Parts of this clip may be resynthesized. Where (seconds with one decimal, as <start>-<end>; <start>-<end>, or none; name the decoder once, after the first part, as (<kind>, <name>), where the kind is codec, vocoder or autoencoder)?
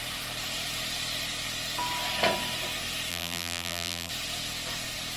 3.1-4.1 (vocoder, BigVGAN v2)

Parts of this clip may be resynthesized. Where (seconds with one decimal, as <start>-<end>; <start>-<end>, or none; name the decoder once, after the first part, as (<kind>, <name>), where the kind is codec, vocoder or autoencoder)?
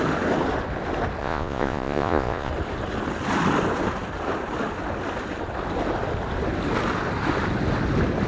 1.2-2.5 (vocoder, Vocos)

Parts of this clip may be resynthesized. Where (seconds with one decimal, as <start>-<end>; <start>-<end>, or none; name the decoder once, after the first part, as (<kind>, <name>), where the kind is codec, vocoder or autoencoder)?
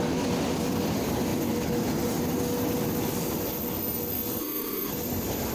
4.4-4.9 (autoencoder, DAC-VAE)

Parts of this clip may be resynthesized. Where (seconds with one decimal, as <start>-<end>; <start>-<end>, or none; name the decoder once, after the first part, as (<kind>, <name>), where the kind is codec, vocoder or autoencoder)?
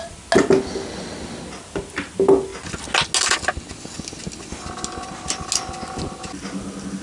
none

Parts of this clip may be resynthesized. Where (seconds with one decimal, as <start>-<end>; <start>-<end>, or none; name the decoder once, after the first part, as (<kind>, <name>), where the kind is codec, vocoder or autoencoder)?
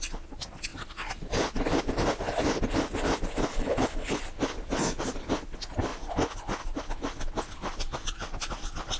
3.5-4.2 (codec, HILCodec)